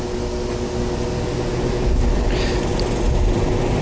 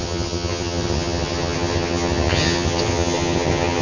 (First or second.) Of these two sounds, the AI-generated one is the second